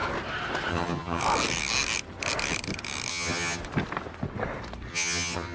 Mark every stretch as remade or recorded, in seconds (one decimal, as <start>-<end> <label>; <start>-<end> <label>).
0.0-0.7 recorded; 0.7-1.2 remade; 1.2-3.1 recorded; 3.1-3.6 remade; 3.6-4.9 recorded; 4.9-5.5 remade